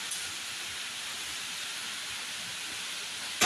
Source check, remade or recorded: recorded